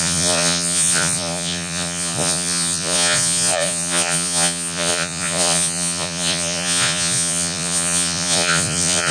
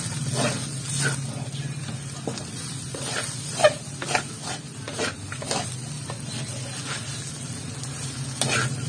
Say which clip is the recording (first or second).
second